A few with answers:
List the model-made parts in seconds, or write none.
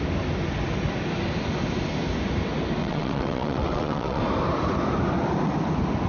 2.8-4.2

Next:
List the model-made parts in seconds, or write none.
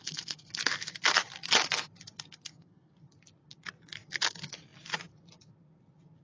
0.0-0.5; 2.3-2.9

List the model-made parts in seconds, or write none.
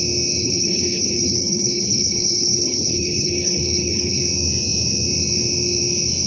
0.4-4.2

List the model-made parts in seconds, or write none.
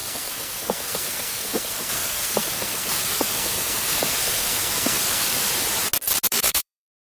0.0-5.5; 6.3-7.2